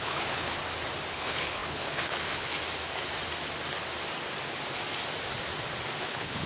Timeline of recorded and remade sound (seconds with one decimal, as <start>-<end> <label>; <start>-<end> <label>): 0.0-0.6 remade; 0.6-1.1 recorded; 1.1-2.5 remade; 2.5-6.0 recorded; 6.0-6.5 remade